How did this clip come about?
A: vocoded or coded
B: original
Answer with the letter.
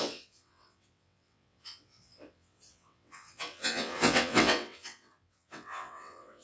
A